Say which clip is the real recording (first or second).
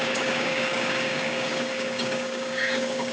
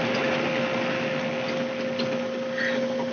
second